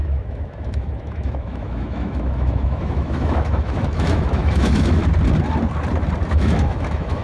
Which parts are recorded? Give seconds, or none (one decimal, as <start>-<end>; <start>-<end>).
5.0-6.3